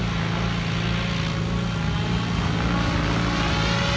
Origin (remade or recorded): recorded